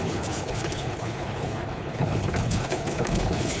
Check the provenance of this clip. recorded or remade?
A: remade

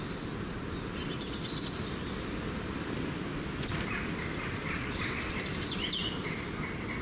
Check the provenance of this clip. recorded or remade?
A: recorded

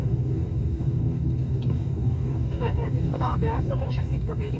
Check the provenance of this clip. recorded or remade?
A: remade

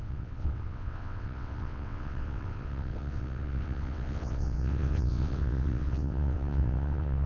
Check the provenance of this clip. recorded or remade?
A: remade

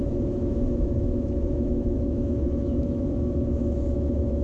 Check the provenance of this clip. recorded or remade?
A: remade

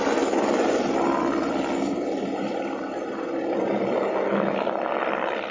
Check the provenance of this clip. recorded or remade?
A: recorded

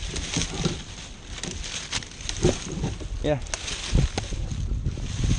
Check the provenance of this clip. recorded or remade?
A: recorded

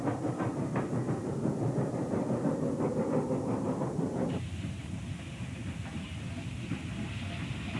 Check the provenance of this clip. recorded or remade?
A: recorded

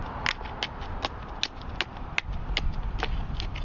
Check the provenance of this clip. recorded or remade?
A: recorded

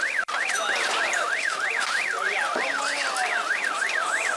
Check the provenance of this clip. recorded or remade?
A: recorded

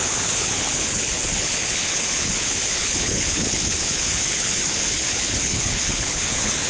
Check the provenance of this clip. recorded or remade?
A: remade